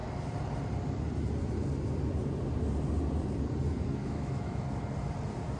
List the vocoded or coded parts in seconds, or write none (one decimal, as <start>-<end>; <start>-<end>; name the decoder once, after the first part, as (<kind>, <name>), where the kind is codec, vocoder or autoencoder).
4.0-4.6 (autoencoder, DAC-VAE)